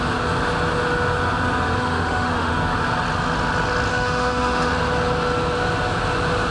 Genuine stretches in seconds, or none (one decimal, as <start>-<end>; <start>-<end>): 0.0-1.8; 2.5-3.9; 4.7-6.5